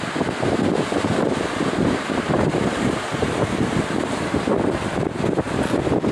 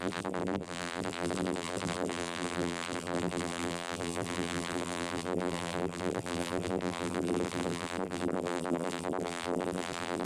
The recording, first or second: first